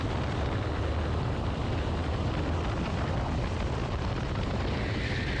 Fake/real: real